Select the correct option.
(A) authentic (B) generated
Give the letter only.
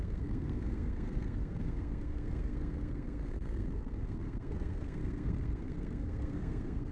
B